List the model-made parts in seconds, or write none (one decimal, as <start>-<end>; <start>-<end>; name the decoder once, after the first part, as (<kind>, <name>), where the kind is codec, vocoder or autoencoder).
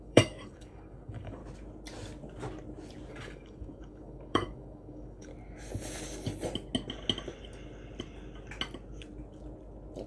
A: 0.0-1.4 (codec, DAC); 3.1-5.3